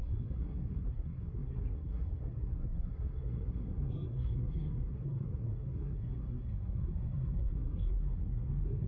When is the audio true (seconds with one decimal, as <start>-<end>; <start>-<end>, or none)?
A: none